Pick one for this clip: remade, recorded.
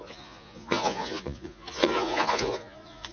remade